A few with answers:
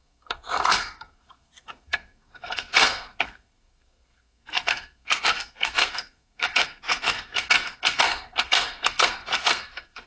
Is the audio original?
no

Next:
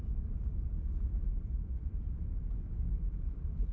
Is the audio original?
yes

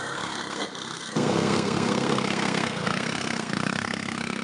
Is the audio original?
no